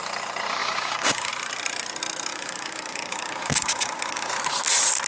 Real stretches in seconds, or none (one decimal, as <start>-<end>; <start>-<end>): 0.0-0.6; 1.3-2.3; 4.3-5.1